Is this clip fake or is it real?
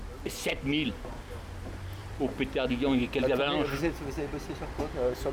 real